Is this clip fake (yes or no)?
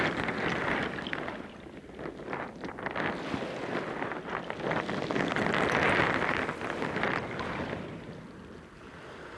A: no